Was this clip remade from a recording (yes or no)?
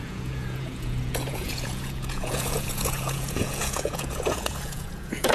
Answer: yes